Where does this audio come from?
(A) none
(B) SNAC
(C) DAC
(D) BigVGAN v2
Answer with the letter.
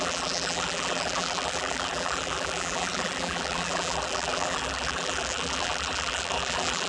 D